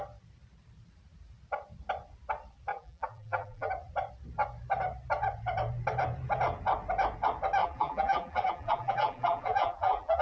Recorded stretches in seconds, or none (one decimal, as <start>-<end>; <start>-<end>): 0.0-2.7; 3.7-7.6